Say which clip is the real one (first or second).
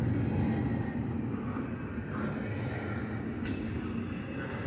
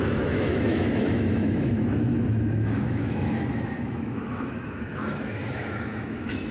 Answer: first